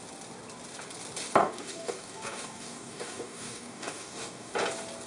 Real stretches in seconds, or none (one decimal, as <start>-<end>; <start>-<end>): 0.0-1.4; 4.5-5.1